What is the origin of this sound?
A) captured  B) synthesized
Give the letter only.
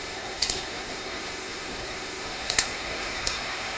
B